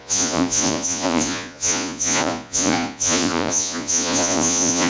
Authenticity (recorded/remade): remade